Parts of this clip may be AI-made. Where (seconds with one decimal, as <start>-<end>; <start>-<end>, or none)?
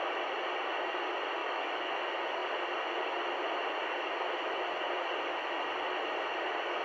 1.4-2.0